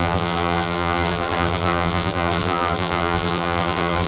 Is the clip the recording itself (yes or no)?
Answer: no